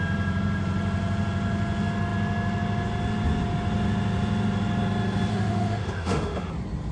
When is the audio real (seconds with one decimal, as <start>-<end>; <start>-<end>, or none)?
0.0-5.3; 6.5-6.9

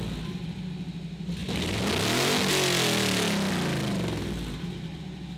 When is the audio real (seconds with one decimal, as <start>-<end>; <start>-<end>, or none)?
0.0-5.4

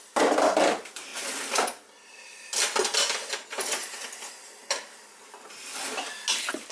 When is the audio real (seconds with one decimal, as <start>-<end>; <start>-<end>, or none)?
0.0-6.7

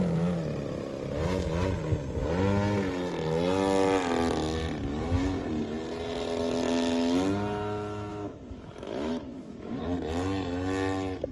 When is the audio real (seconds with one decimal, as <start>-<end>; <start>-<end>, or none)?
0.0-8.1; 9.8-11.3

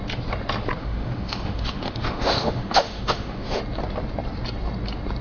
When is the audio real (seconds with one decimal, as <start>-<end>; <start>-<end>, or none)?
0.0-0.8; 3.6-5.2

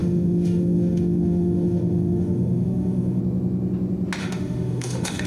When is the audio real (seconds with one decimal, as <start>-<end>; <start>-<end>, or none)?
3.2-4.2